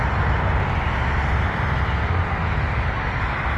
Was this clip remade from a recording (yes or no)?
no